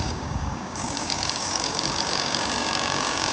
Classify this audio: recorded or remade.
remade